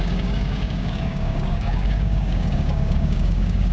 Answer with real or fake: fake